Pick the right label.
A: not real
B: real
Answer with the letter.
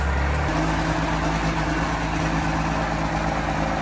B